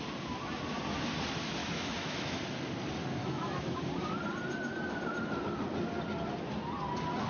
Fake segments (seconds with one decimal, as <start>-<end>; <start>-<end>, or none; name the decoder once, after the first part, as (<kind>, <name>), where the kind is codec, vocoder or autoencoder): 1.6-2.4 (autoencoder, DAC-VAE); 3.2-3.8